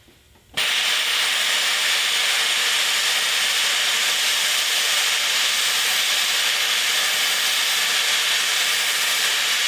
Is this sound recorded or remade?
recorded